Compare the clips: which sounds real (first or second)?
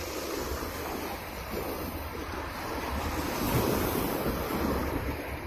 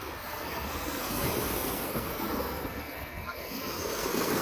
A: first